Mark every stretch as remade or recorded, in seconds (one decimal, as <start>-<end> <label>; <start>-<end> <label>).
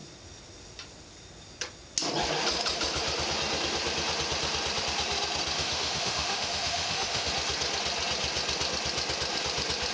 0.0-5.6 recorded; 5.6-7.3 remade; 7.3-9.9 recorded